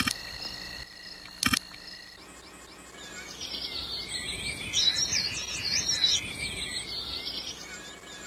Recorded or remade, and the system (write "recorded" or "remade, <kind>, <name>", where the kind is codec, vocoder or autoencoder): recorded